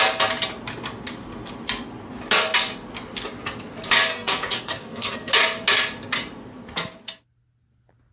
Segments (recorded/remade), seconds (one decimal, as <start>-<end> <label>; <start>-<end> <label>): 0.0-4.1 recorded; 4.1-5.3 remade; 5.3-8.1 recorded